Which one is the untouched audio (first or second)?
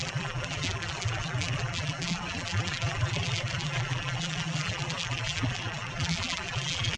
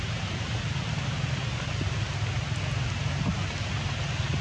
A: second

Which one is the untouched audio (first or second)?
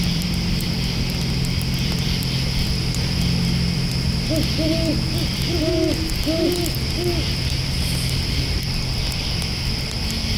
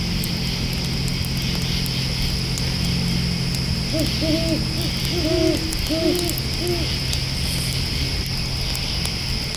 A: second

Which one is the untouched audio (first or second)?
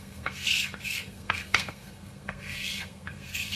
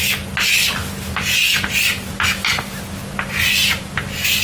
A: second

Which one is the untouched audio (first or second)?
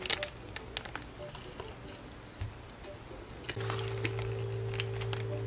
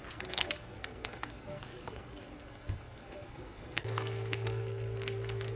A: first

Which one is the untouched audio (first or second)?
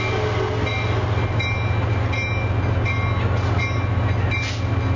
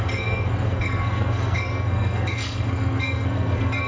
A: first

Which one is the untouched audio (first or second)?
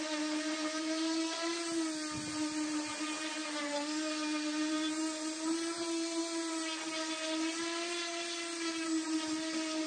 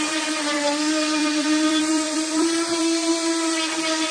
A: first